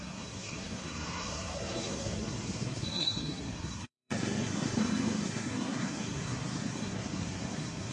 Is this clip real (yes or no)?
no